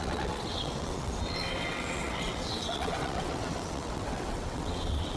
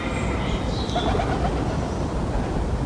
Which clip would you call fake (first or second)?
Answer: first